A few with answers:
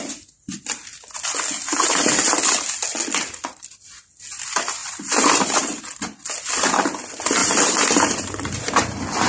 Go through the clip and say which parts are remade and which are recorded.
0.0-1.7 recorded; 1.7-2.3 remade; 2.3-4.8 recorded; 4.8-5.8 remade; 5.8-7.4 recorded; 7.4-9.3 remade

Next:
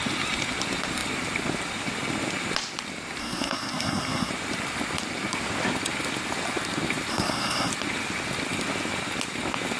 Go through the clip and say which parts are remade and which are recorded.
0.0-3.2 recorded; 3.2-4.3 remade; 4.3-7.1 recorded; 7.1-7.7 remade; 7.7-9.8 recorded

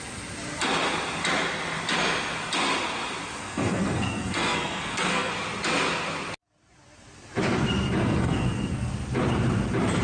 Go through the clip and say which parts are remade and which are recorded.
0.0-3.4 recorded; 3.4-5.3 remade; 5.3-8.0 recorded; 8.0-8.9 remade; 8.9-10.0 recorded

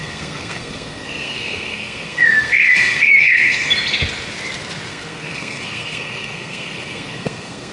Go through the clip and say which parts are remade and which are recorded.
0.0-3.7 remade; 3.7-4.9 recorded; 4.9-7.7 remade

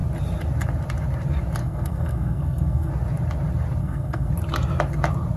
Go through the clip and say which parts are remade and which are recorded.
0.0-1.6 recorded; 1.6-2.9 remade; 2.9-3.8 recorded; 3.8-4.3 remade; 4.3-5.4 recorded

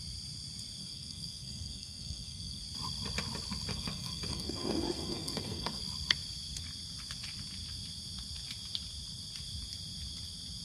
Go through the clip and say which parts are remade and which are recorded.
0.0-0.8 recorded; 0.8-2.6 remade; 2.6-3.7 recorded; 3.7-5.8 remade; 5.8-10.6 recorded

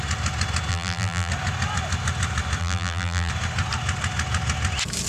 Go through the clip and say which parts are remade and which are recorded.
0.0-0.7 recorded; 0.7-1.3 remade; 1.3-2.6 recorded; 2.6-3.3 remade; 3.3-5.1 recorded